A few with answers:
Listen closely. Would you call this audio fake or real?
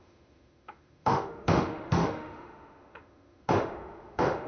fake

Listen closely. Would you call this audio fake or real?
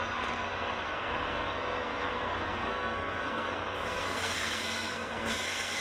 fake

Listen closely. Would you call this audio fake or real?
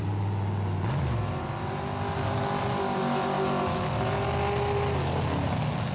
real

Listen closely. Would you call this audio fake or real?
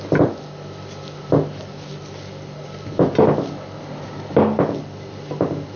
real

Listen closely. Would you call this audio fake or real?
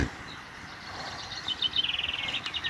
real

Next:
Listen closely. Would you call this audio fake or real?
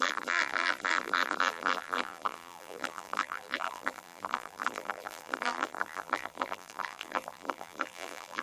fake